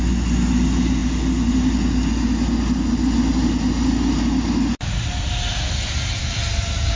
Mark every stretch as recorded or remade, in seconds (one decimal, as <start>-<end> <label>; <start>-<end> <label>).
0.0-7.0 recorded